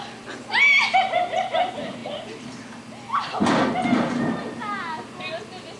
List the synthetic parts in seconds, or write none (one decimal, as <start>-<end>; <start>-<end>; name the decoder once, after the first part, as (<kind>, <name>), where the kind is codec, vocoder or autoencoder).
none